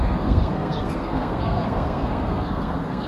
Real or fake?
fake